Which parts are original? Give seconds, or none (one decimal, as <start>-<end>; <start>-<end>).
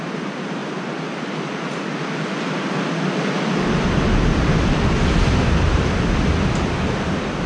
0.0-7.5